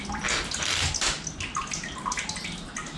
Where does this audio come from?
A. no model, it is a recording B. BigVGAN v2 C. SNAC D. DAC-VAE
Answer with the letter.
A